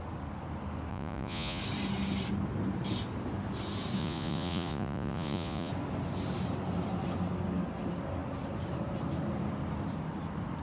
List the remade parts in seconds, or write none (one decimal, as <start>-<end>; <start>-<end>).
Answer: 0.9-1.6; 4.0-5.7